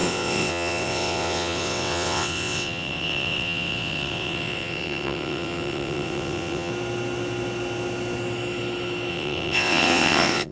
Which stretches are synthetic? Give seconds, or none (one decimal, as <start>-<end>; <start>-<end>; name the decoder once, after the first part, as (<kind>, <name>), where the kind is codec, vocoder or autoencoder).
0.0-6.7 (vocoder, WaveNeXt); 9.1-10.5